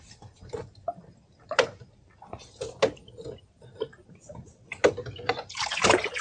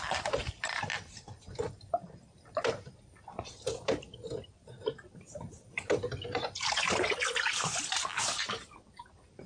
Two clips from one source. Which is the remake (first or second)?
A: second